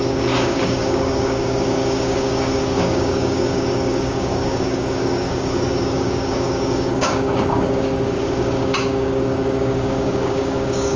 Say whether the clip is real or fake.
fake